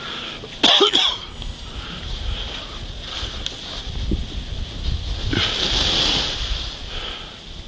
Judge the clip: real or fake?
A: real